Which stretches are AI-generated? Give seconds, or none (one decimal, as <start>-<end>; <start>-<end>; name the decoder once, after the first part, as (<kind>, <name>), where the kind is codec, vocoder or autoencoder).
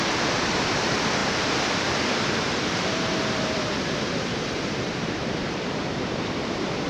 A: 0.0-6.9 (vocoder, BigVGAN v2)